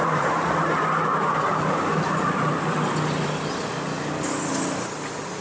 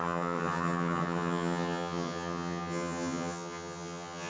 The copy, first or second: second